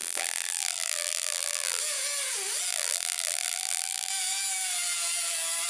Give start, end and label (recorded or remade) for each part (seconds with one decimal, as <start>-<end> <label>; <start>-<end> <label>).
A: 0.0-1.8 remade; 1.8-2.7 recorded; 2.7-4.1 remade; 4.1-5.7 recorded